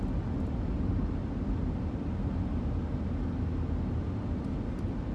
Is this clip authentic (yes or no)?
yes